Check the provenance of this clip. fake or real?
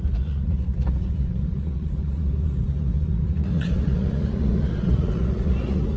fake